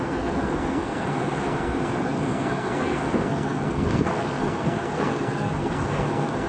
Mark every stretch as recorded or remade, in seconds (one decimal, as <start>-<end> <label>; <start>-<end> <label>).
0.0-6.5 remade